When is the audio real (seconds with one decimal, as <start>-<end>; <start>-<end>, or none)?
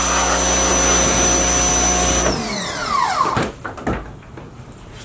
0.0-2.8; 3.5-5.0